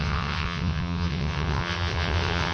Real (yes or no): no